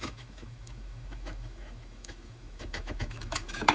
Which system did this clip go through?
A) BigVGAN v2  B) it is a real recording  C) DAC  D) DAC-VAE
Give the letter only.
D